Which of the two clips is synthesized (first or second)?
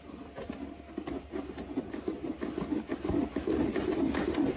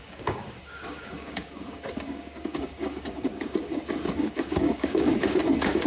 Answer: second